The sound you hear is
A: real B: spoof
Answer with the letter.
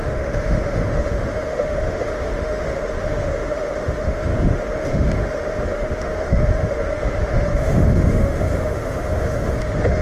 B